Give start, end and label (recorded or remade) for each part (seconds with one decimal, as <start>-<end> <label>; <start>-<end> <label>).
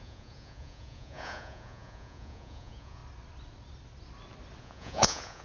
0.0-3.0 remade; 3.0-4.6 recorded; 4.6-5.4 remade